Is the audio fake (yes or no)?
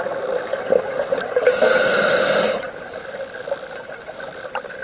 no